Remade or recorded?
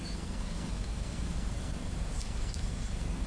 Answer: remade